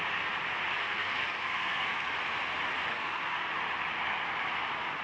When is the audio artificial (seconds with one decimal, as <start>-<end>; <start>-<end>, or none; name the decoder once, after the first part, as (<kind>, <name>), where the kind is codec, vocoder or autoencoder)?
0.8-2.1 (codec, SNAC); 2.9-3.5

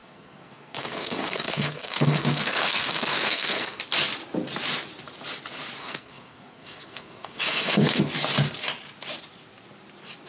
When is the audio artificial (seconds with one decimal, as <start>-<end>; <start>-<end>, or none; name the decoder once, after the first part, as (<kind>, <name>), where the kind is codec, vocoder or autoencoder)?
0.0-3.8 (codec, SNAC); 5.8-8.0